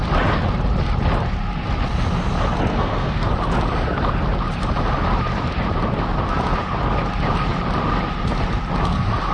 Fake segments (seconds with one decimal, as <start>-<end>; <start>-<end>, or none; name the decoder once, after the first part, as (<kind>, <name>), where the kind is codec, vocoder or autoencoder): 2.7-3.3 (codec, SNAC)

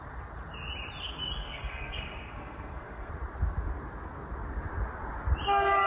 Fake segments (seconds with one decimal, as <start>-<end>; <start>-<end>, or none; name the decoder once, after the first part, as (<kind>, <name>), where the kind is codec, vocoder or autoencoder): 1.4-3.1 (codec, SNAC)

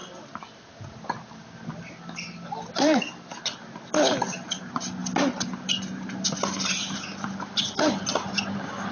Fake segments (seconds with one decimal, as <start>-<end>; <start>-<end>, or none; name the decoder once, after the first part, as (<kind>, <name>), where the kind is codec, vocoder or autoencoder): none

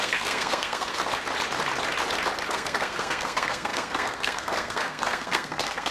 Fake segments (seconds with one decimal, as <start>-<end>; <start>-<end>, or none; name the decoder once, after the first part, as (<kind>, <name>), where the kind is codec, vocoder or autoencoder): 0.0-1.0 (codec, SNAC); 2.5-5.9

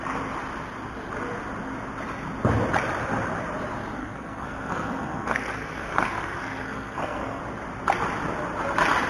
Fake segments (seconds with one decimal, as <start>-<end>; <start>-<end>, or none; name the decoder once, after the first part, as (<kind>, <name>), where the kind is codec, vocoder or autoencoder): 4.0-7.4 (codec, SNAC)

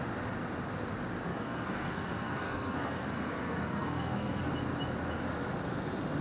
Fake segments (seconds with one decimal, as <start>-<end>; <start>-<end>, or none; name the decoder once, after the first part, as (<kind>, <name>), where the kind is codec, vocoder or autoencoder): 1.3-4.5 (codec, SNAC)